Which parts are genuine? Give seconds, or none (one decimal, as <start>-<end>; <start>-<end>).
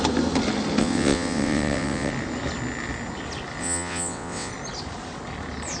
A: 0.0-0.8; 2.1-3.6; 4.5-5.8